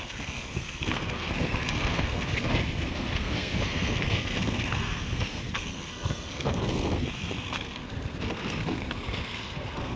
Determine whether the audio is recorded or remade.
remade